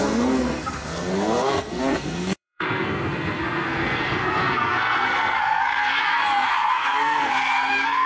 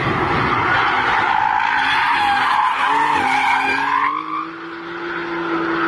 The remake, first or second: first